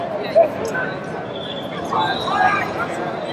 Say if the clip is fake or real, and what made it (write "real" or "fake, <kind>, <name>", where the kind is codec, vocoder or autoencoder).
real